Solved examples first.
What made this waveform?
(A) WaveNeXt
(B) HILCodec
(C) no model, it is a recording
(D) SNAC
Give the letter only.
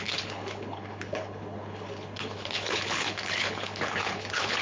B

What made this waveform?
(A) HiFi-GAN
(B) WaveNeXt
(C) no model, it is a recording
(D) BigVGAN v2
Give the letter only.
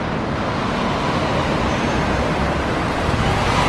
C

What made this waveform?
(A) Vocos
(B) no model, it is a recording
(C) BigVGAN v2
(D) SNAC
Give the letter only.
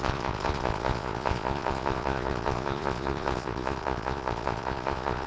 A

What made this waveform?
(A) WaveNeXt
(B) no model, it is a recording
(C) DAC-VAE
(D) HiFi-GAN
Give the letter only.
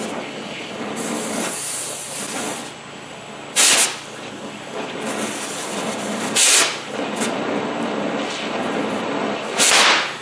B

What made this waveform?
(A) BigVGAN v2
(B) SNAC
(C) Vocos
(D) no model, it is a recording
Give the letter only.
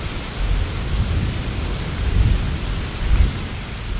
D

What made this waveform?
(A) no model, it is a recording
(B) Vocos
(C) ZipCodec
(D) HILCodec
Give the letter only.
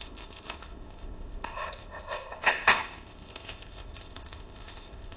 C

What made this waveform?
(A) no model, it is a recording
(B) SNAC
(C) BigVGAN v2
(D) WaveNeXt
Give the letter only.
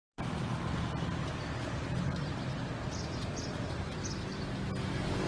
A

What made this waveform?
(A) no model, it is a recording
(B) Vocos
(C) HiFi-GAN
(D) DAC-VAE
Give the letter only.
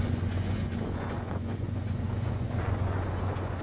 B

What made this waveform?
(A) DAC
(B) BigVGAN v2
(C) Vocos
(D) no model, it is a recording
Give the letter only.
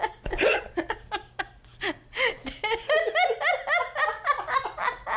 D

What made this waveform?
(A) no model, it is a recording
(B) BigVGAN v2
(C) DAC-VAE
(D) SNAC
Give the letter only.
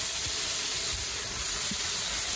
A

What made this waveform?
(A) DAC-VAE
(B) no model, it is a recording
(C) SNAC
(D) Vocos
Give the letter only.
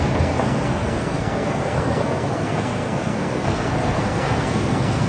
C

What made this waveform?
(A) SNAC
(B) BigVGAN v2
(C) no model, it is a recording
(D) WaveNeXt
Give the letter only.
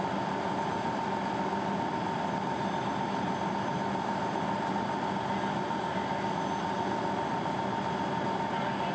C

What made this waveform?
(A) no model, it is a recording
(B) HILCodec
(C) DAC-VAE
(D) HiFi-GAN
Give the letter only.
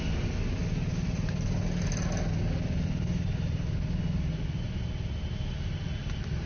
A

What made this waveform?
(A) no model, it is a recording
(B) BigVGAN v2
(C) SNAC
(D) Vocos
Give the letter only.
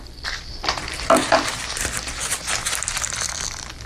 B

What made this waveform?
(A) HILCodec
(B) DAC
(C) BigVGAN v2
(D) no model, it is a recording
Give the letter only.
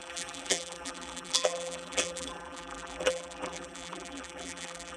C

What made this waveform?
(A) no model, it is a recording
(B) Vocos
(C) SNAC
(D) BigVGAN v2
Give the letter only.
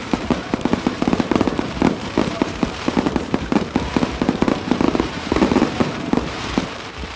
D